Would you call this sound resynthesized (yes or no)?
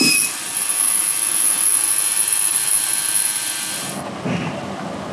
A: no